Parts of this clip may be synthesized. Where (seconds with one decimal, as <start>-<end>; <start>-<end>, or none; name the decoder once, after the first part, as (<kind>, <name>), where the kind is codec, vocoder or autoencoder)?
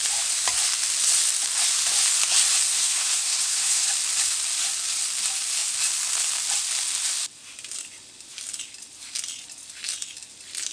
2.7-3.9 (codec, SNAC)